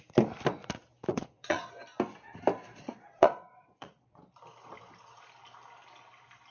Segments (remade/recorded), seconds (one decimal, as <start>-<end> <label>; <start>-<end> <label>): 0.0-1.1 recorded; 1.1-1.7 remade; 1.7-2.7 recorded; 2.7-4.3 remade; 4.3-6.5 recorded